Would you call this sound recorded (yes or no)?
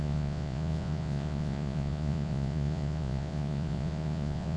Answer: no